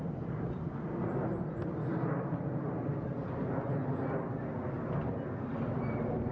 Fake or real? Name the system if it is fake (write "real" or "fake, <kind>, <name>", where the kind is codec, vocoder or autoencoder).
real